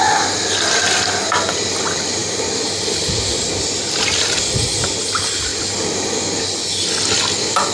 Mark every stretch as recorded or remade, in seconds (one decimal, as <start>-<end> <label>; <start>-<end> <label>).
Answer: 0.0-2.2 recorded; 2.2-3.5 remade; 3.5-7.7 recorded